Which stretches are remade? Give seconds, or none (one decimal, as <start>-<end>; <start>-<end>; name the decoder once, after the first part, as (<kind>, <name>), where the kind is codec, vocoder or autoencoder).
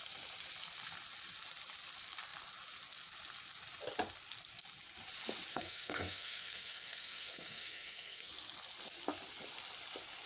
5.5-8.3 (codec, SNAC)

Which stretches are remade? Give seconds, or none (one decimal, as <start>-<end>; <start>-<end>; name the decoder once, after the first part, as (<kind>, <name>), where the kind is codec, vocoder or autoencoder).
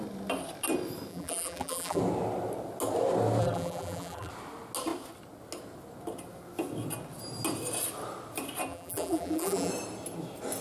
1.1-2.0 (vocoder, BigVGAN v2); 3.4-4.3; 8.7-9.7